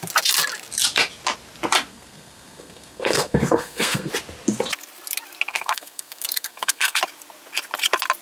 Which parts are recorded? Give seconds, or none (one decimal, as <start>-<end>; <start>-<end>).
0.0-1.9; 4.1-5.5; 7.0-8.2

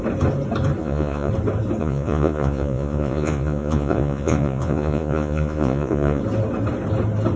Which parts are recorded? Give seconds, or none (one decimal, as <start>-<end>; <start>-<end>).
0.0-0.8; 1.3-1.8; 6.2-7.4

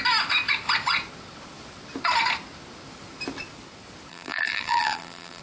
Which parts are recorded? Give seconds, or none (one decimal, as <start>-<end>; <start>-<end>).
0.0-4.1

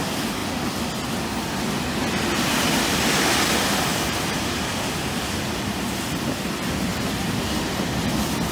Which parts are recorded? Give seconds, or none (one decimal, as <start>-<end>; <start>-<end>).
0.0-3.9; 4.6-6.9; 7.4-8.5